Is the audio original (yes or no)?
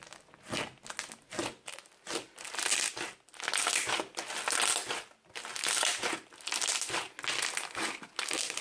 yes